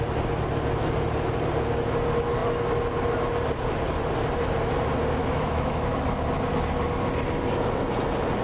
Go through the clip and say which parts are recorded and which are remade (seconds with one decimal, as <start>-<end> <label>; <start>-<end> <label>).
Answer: 0.0-5.2 recorded; 5.2-6.0 remade; 6.0-8.4 recorded